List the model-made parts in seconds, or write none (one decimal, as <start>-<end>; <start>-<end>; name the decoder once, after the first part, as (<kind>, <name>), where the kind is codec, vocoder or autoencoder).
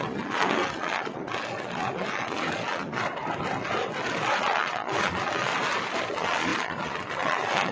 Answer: 0.0-3.0 (vocoder, Vocos); 4.4-5.5; 6.1-7.7